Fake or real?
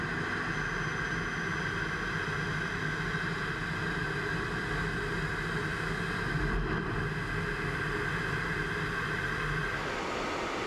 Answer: real